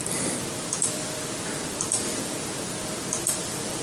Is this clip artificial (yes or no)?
yes